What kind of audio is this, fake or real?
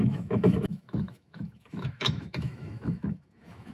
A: fake